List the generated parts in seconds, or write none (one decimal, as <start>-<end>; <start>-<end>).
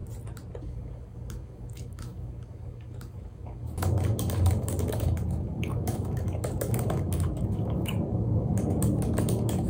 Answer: 0.6-9.7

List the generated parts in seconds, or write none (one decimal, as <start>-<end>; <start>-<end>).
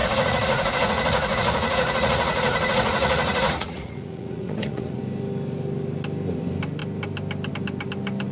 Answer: 0.0-5.0